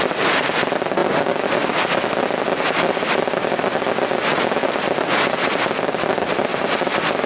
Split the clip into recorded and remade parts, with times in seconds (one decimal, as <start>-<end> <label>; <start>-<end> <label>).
0.0-1.0 remade; 1.0-4.7 recorded; 4.7-7.3 remade